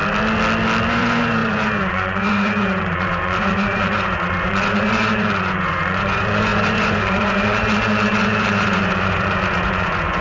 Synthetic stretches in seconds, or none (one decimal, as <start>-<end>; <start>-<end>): 0.9-10.2